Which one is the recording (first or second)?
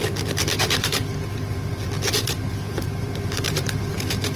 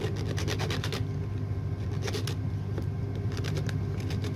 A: second